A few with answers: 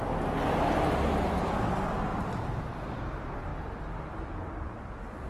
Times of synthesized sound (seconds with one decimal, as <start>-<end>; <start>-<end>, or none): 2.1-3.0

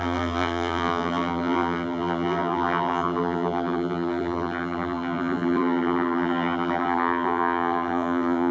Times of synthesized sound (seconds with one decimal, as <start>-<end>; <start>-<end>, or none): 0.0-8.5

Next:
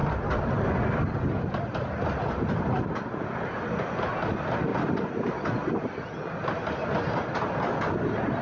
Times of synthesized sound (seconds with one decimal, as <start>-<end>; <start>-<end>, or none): none

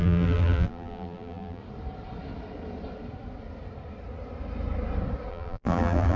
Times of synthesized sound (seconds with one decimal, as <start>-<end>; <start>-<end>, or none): 0.0-1.6; 5.3-6.2